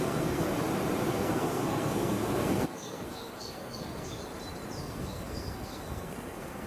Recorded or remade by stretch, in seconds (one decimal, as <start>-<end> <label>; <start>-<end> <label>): 0.0-0.5 remade; 0.5-1.1 recorded; 1.1-4.2 remade; 4.2-4.8 recorded; 4.8-6.7 remade